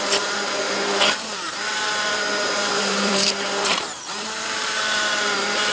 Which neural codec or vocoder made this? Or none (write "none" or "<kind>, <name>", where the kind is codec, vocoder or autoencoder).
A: vocoder, BigVGAN v2